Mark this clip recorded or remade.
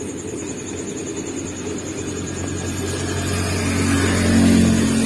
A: recorded